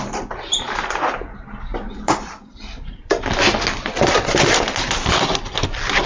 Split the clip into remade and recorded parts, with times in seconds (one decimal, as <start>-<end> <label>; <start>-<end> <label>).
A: 0.0-1.7 recorded; 1.7-3.0 remade; 3.0-6.1 recorded